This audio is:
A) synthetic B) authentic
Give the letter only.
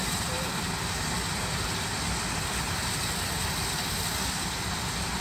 B